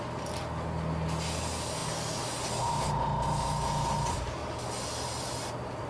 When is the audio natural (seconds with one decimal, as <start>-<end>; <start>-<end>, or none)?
0.0-5.9